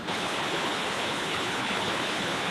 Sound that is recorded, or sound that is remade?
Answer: remade